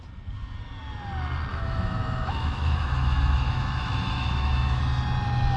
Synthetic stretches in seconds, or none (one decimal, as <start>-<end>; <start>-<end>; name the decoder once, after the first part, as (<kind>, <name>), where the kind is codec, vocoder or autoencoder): 1.5-4.8 (autoencoder, DAC-VAE)